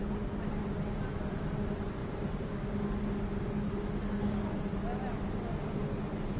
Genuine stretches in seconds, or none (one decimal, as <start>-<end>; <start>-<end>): 0.0-6.4